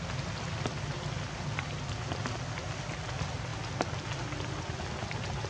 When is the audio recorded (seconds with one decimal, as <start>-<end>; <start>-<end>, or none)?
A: 0.0-5.5